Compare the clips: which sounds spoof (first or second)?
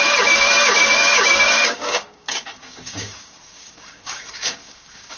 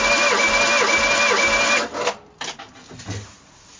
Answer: first